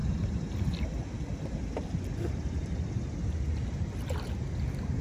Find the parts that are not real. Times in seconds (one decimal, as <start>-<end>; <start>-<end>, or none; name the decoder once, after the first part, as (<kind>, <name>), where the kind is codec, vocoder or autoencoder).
3.6-4.3 (vocoder, BigVGAN v2)